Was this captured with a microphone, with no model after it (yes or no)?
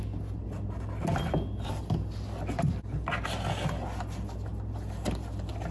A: yes